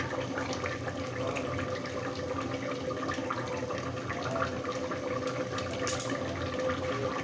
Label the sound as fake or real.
real